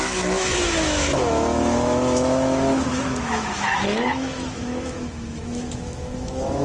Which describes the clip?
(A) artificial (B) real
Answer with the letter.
A